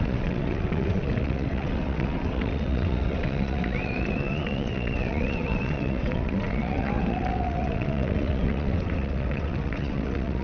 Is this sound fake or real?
fake